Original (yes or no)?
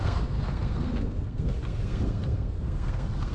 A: no